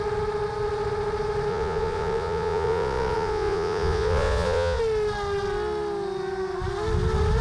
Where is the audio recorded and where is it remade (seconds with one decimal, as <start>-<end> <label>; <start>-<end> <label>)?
0.0-1.5 recorded; 1.5-4.8 remade; 4.8-7.4 recorded